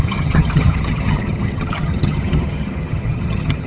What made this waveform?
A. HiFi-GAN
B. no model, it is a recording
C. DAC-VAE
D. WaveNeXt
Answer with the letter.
A